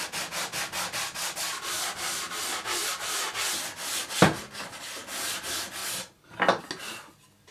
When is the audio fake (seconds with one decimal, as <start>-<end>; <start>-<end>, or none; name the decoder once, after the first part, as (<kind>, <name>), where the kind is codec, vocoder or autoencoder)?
none